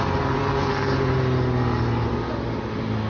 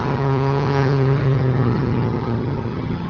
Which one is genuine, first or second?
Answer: first